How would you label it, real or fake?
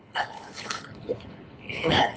fake